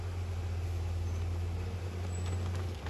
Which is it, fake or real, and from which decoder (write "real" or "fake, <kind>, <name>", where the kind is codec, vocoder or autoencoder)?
real